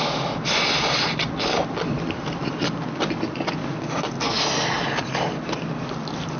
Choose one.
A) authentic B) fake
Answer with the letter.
A